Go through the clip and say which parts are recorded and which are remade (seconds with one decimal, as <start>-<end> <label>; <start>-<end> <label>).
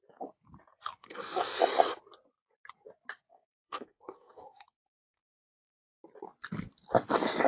0.0-1.0 recorded; 1.0-1.6 remade; 1.6-3.3 recorded; 3.3-5.4 remade; 5.4-7.5 recorded